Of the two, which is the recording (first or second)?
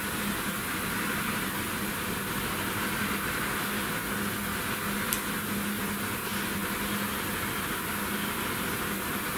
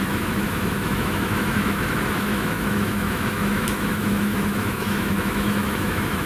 first